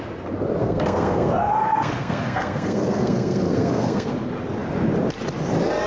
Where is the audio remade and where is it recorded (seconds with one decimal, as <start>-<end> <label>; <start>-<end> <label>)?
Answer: 0.0-0.6 recorded; 0.6-4.1 remade; 4.1-5.9 recorded